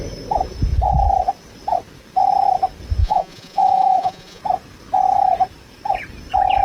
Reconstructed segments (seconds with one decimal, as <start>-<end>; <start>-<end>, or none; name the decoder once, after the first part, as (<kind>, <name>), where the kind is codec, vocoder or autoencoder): 3.0-4.4 (vocoder, Vocos)